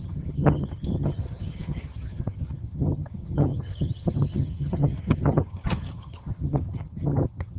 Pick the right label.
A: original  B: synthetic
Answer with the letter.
B